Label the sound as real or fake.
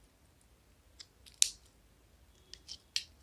real